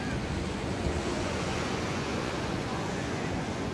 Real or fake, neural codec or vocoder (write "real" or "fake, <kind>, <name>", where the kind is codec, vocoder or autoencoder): fake, vocoder, Vocos